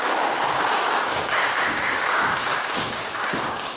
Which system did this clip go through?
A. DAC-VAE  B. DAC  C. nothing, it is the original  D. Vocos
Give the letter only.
B